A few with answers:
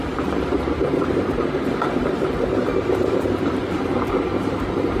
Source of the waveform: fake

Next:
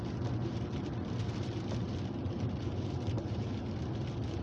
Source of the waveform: real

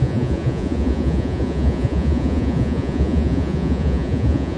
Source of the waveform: fake